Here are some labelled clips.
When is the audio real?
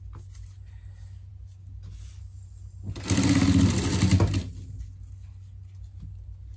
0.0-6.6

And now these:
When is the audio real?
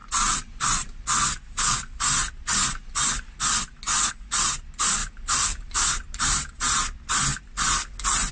0.0-5.0; 6.5-8.3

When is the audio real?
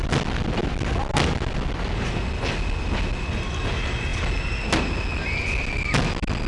0.0-6.5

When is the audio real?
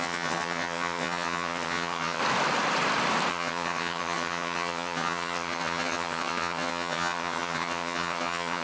2.2-3.3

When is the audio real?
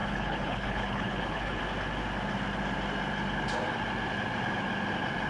1.6-5.3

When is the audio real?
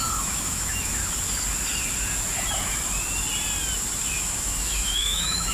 0.9-4.2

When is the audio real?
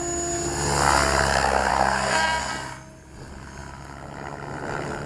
0.0-1.7; 2.5-5.1